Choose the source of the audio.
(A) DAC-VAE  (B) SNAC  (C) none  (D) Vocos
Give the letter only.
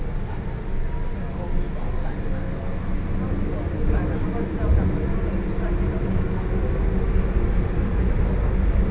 C